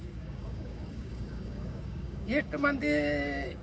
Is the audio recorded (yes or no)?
no